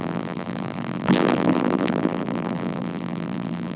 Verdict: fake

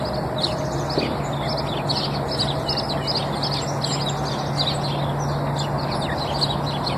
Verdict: real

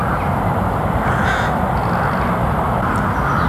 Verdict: real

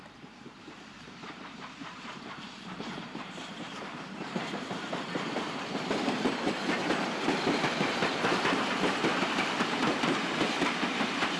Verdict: fake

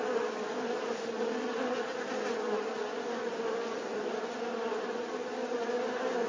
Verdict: real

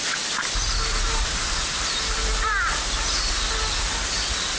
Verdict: real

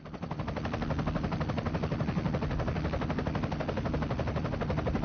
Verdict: real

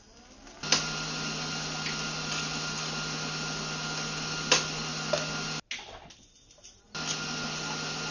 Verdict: real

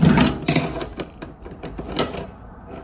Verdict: real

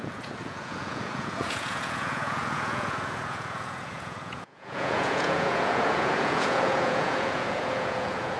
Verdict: fake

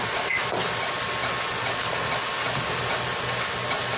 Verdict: real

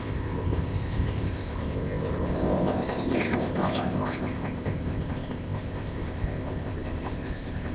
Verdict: fake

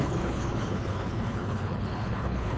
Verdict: fake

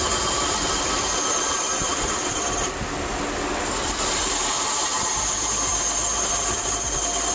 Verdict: real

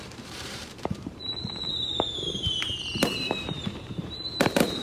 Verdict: fake